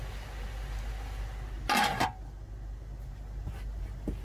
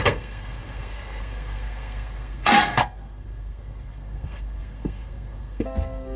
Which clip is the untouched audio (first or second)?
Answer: first